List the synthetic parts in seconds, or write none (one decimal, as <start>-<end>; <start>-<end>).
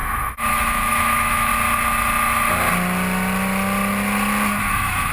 0.0-1.5; 4.6-5.1